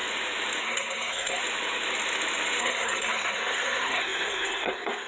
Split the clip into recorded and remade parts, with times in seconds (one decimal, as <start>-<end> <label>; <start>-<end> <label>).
0.0-0.6 recorded; 0.6-1.4 remade; 1.4-2.6 recorded; 2.6-5.1 remade